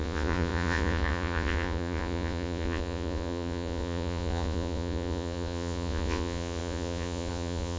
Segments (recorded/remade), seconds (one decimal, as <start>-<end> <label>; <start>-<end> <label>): 0.0-7.8 remade